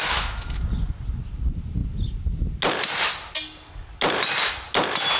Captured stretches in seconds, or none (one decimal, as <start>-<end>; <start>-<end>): 0.6-5.2